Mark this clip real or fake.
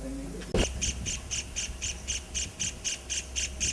real